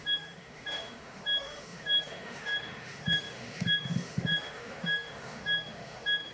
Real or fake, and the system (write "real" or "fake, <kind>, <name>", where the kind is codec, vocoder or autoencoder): fake, autoencoder, DAC-VAE